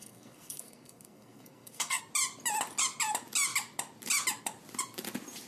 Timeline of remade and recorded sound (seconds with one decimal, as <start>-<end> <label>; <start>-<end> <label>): 0.0-2.0 remade; 2.0-5.5 recorded